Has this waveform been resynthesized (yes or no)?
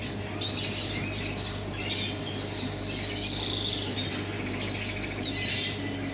no